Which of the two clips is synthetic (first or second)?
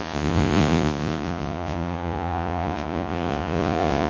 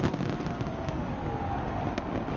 first